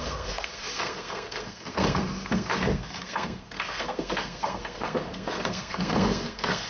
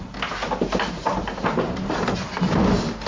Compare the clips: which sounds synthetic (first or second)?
first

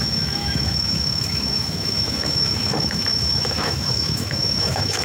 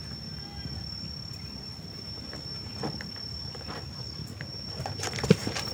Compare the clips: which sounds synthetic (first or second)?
first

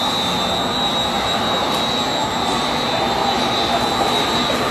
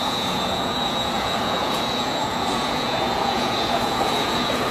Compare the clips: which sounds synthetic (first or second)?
second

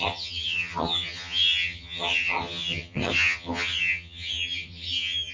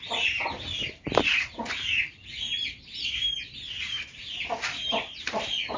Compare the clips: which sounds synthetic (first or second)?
first